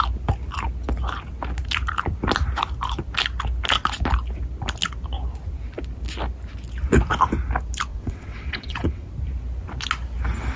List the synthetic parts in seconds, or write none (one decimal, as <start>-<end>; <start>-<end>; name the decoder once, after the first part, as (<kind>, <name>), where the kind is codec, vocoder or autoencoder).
7.9-9.1 (vocoder, WaveNeXt)